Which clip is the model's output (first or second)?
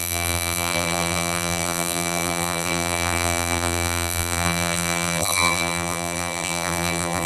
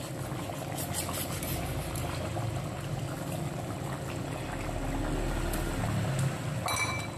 first